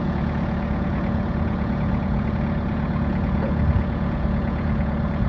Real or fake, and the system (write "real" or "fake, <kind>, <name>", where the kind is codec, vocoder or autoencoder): fake, vocoder, Vocos